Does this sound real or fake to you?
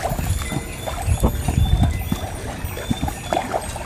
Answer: real